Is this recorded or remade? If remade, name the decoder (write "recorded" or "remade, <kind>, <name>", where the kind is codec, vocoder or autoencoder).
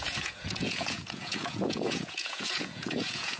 remade, vocoder, Vocos